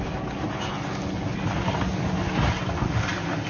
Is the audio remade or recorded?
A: recorded